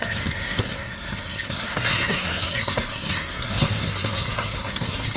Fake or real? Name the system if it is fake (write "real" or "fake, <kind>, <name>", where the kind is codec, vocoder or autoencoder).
fake, codec, SNAC